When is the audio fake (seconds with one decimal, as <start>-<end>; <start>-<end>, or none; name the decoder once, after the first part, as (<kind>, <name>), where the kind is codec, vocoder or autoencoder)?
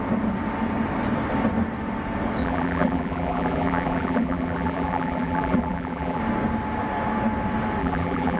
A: 2.4-6.2 (vocoder, BigVGAN v2); 7.8-8.4